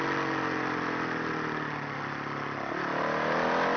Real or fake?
real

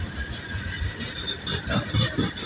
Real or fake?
real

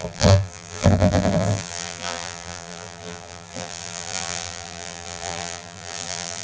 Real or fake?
fake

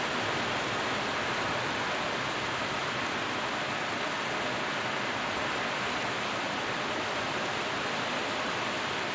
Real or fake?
real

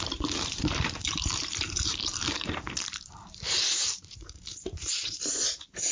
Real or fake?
fake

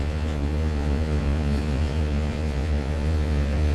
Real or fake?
fake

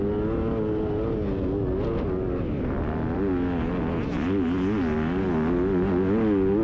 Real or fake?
real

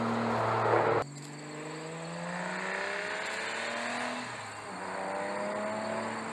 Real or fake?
real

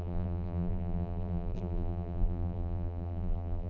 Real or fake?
fake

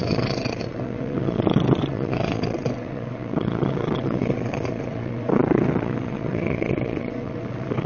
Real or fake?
fake